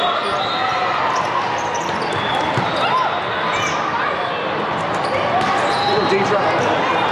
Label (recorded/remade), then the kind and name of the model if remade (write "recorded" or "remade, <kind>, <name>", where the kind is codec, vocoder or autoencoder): recorded